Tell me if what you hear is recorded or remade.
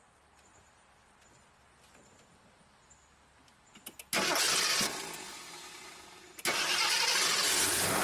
recorded